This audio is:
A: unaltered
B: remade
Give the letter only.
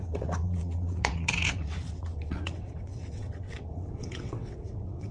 B